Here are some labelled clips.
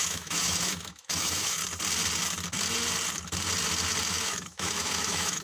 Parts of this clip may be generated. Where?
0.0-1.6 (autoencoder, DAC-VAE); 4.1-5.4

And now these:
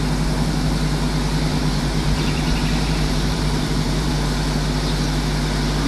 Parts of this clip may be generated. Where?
1.5-4.1 (vocoder, BigVGAN v2)

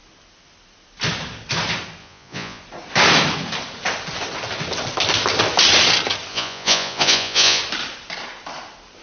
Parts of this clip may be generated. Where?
2.0-2.6 (vocoder, Vocos); 6.3-7.6

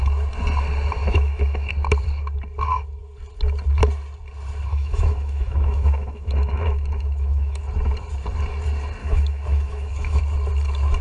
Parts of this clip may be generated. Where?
1.0-1.7 (autoencoder, DAC-VAE); 4.7-7.6; 9.0-10.2

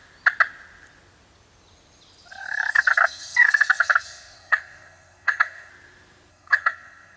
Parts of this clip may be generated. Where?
2.3-5.7 (codec, SNAC); 6.3-7.2

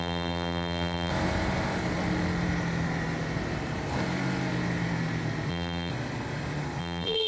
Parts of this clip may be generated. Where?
0.0-1.1 (vocoder, BigVGAN v2); 5.5-5.9; 6.8-7.3

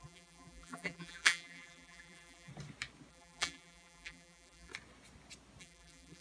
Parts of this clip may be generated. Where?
0.0-2.5 (vocoder, BigVGAN v2); 3.1-4.7; 5.6-6.2